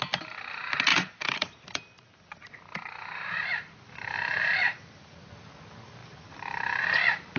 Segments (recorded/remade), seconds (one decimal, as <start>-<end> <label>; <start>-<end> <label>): 0.0-0.9 recorded; 0.9-5.3 remade; 5.3-6.0 recorded; 6.0-7.4 remade

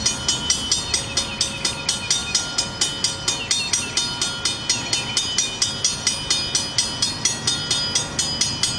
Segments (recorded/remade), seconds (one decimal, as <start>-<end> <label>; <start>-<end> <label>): 0.0-8.8 recorded

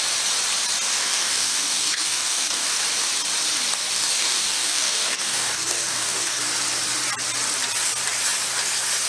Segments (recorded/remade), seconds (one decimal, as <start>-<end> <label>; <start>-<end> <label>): 0.0-0.9 recorded; 0.9-2.8 remade; 2.8-3.9 recorded; 3.9-6.4 remade; 6.4-9.1 recorded

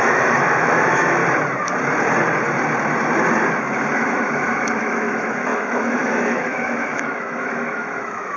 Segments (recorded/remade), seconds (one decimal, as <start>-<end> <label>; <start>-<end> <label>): 0.0-1.2 remade; 1.2-4.0 recorded; 4.0-8.4 remade

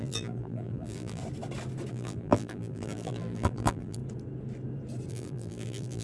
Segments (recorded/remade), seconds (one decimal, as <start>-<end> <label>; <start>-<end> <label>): 0.0-1.2 remade; 1.2-1.9 recorded; 1.9-4.0 remade; 4.0-5.1 recorded; 5.1-6.0 remade

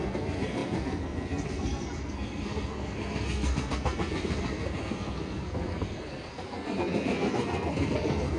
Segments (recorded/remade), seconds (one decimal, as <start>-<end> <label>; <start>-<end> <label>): 0.0-8.4 remade